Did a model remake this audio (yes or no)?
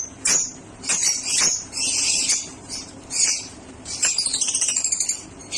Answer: yes